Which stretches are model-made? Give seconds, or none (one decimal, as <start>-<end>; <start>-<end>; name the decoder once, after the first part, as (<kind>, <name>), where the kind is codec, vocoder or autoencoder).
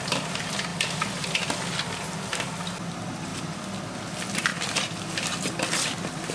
none